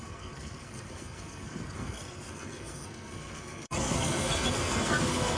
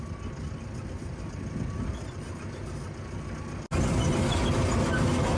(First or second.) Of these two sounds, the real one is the second